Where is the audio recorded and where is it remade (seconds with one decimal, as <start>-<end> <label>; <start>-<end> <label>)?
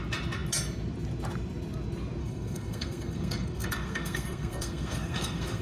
0.0-2.2 recorded; 2.2-5.6 remade